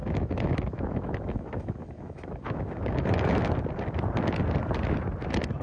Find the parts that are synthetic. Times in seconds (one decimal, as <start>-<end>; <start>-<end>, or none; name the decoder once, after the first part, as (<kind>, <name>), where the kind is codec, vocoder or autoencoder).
0.0-3.4 (autoencoder, DAC-VAE)